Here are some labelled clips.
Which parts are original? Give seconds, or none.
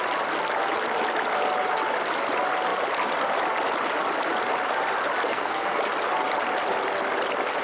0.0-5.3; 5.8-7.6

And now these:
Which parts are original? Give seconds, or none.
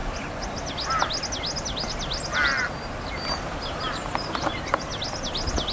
0.0-5.7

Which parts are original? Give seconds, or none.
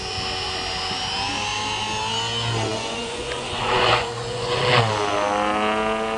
0.0-2.7; 4.6-6.2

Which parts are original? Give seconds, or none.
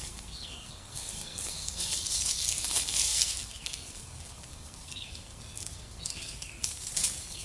none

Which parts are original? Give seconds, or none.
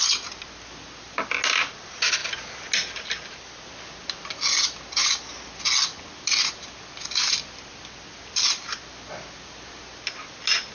0.0-10.7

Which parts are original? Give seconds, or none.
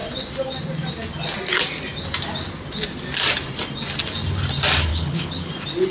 0.0-4.9; 5.5-5.9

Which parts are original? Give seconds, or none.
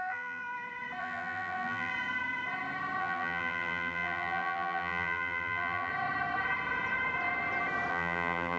0.4-1.0; 1.9-3.0; 5.9-7.9